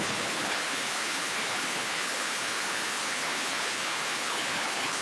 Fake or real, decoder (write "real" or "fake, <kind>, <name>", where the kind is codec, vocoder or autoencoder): fake, codec, HILCodec